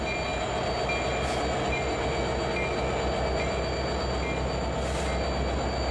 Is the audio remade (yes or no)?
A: no